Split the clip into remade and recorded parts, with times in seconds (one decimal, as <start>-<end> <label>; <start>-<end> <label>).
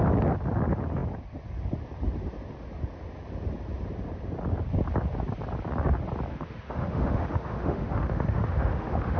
0.0-6.3 recorded; 6.3-9.2 remade